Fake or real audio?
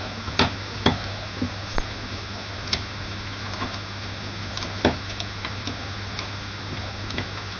fake